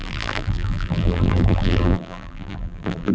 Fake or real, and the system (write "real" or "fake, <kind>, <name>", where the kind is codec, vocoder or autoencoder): fake, vocoder, BigVGAN v2